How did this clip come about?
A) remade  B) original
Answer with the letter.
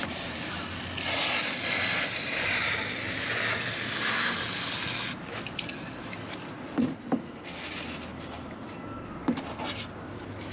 B